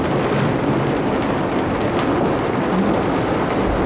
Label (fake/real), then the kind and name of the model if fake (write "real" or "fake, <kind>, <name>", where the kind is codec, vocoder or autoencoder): real